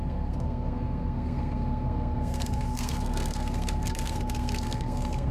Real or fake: fake